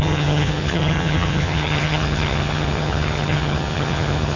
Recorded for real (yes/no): no